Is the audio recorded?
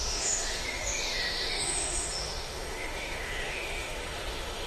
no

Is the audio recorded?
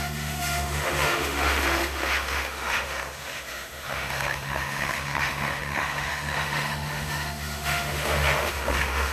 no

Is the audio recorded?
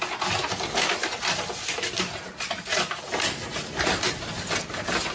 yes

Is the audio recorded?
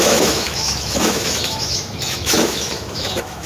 no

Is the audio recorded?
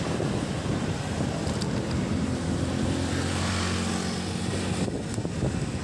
yes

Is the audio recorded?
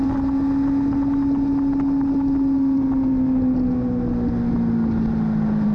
yes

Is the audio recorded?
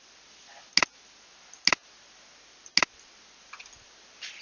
yes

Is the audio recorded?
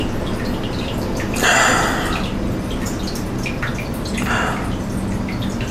yes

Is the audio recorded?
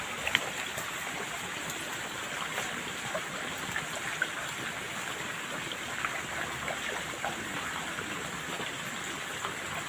yes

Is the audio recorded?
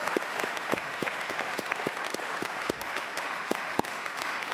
no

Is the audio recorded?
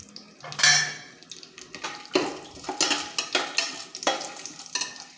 yes